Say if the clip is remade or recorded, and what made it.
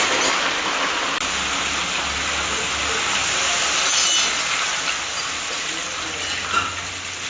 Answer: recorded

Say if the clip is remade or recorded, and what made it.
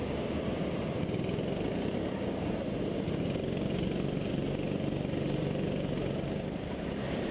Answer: recorded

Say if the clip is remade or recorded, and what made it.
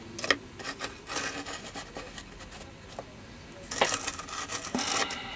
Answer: recorded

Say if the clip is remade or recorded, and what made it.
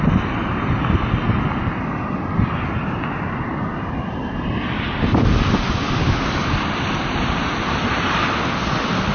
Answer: recorded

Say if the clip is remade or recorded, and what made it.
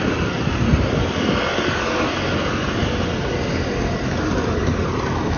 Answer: recorded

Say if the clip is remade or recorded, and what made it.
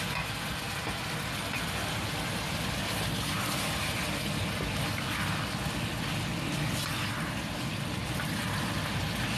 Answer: recorded